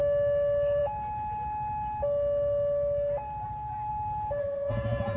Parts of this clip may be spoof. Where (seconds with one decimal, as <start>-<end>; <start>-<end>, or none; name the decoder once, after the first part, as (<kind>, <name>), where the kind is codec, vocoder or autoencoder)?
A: 4.4-5.2 (vocoder, Vocos)